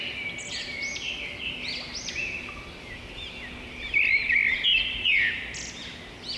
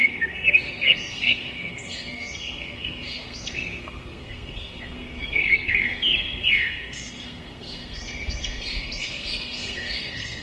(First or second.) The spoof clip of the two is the second